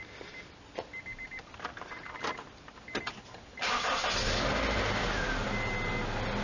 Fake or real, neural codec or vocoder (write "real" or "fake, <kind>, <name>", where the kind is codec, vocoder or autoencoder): real